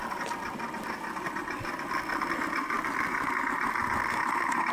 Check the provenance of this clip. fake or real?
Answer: real